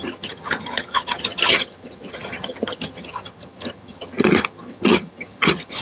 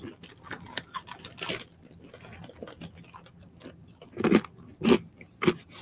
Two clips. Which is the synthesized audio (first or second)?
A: first